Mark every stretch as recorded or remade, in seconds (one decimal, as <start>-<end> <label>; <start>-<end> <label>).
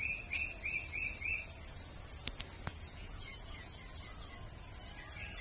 0.0-2.7 recorded; 2.7-3.8 remade; 3.8-5.4 recorded